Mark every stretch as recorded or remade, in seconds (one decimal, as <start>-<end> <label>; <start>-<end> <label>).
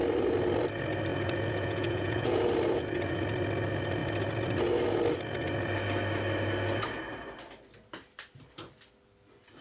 0.0-1.1 recorded; 1.1-2.5 remade; 2.5-9.6 recorded